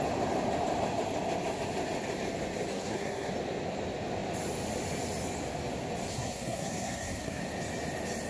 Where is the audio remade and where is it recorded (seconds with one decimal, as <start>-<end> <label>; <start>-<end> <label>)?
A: 0.0-2.7 recorded; 2.7-3.3 remade; 3.3-6.1 recorded; 6.1-7.4 remade; 7.4-8.3 recorded